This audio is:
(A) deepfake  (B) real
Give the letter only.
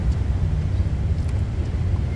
B